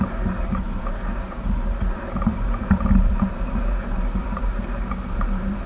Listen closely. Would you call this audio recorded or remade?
remade